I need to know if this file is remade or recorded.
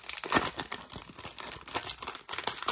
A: recorded